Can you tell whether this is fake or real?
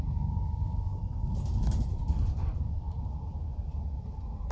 real